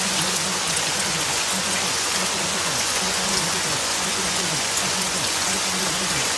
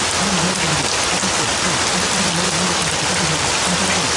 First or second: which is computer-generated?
first